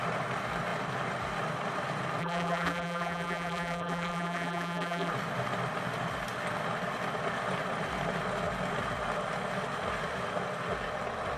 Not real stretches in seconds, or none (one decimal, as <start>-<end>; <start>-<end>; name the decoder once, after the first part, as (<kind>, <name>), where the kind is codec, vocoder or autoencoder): 2.2-5.1 (vocoder, BigVGAN v2)